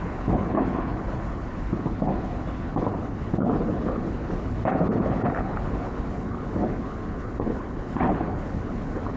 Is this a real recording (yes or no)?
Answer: no